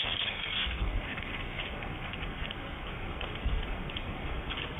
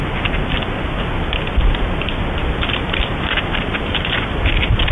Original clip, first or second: second